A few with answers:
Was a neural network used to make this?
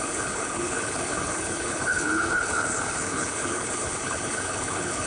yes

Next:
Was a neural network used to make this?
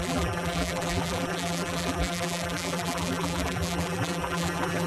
yes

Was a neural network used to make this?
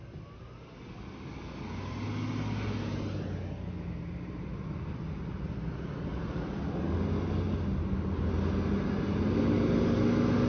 no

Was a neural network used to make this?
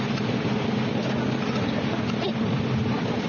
no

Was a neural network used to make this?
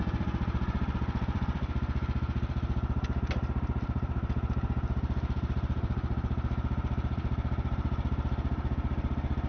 yes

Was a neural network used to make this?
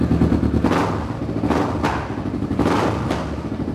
no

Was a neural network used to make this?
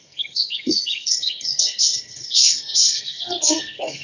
yes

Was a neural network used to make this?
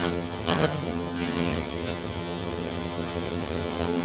yes